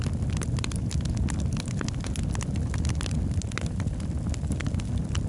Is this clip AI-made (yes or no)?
no